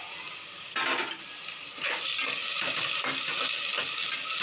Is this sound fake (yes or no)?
no